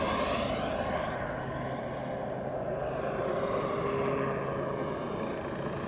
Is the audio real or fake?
real